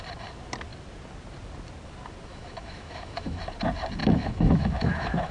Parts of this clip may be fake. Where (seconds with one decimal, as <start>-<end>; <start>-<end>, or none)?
2.3-3.4; 4.0-5.3